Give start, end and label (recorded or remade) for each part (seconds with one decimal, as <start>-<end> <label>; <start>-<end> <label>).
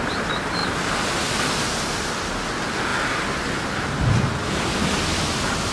0.0-5.7 recorded